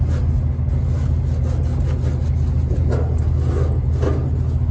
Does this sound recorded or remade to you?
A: recorded